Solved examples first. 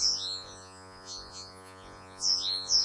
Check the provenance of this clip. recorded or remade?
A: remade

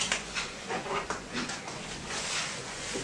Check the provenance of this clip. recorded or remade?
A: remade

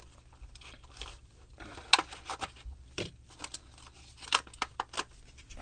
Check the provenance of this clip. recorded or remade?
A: recorded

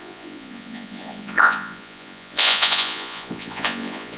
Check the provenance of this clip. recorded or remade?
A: remade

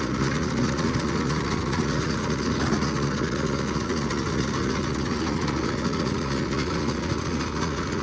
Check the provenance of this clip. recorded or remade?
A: remade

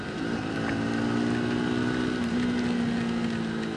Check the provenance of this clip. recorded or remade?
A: recorded